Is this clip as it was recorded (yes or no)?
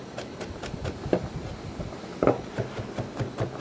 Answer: yes